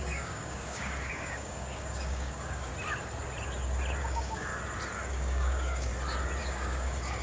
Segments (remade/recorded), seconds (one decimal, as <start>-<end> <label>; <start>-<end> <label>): 0.0-2.7 remade; 2.7-4.0 recorded; 4.0-4.5 remade; 4.5-5.1 recorded; 5.1-5.9 remade; 5.9-6.4 recorded; 6.4-7.2 remade